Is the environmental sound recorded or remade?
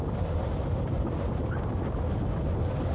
recorded